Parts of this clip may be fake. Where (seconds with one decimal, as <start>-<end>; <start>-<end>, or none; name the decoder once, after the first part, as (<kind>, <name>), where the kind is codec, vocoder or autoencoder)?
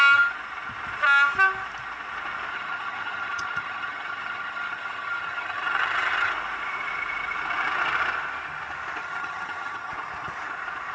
2.5-6.3 (vocoder, HiFi-GAN); 9.0-9.9